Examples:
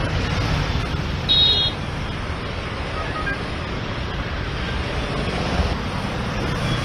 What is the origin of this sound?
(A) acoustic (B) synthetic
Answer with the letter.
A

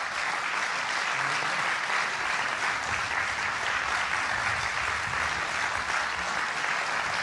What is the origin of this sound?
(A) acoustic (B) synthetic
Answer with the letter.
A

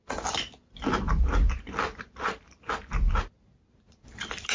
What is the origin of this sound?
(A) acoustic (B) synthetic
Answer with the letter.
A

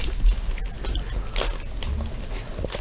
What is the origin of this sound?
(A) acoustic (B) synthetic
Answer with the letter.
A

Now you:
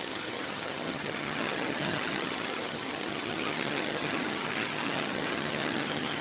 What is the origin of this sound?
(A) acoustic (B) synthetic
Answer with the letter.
B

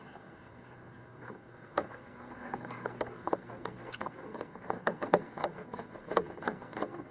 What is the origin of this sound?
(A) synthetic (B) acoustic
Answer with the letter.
A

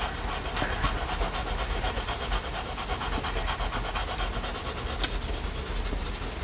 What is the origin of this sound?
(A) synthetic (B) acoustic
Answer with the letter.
B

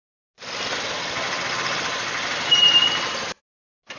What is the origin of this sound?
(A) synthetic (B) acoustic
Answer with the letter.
B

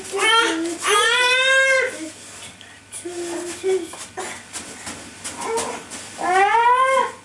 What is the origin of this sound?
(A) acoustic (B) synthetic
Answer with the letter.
A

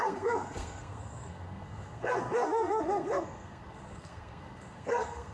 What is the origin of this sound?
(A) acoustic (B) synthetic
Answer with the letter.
B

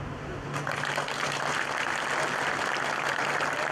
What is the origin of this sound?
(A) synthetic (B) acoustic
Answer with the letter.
B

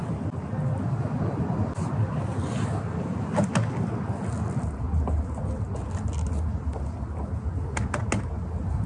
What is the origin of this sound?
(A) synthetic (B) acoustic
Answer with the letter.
B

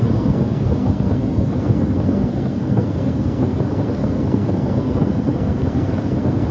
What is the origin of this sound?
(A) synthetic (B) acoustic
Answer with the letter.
A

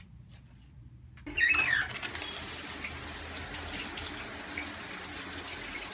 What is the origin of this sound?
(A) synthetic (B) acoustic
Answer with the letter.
B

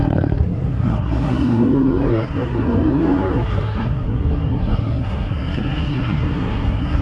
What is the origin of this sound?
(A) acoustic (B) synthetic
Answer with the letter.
B